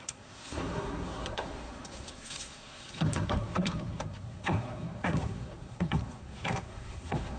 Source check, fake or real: fake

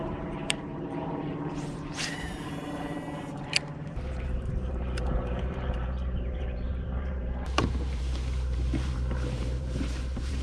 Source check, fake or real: fake